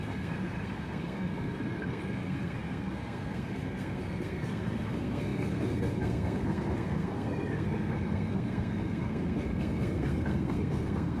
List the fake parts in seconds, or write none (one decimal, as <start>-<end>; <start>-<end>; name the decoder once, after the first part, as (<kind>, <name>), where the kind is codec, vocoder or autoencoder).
0.0-11.2 (codec, SNAC)